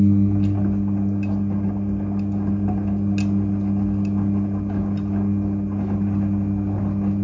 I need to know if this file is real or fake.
real